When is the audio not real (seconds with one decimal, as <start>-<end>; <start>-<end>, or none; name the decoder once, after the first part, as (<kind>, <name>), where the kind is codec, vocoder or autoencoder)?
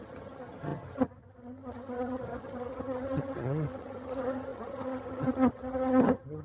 0.0-6.4 (vocoder, HiFi-GAN)